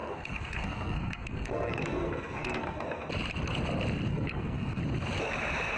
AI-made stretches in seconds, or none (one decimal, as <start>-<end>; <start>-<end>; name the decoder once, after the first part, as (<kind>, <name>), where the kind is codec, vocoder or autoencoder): 0.0-3.1 (codec, SNAC); 4.1-4.8